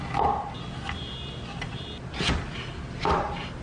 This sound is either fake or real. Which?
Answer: real